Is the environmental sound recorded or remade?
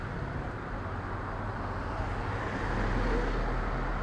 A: recorded